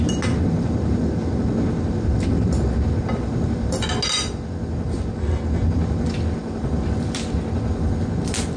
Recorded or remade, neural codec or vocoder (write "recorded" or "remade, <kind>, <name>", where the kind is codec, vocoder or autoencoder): recorded